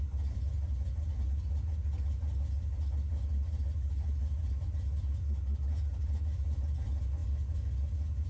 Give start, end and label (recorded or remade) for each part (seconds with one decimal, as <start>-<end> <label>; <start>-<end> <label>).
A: 0.0-8.3 recorded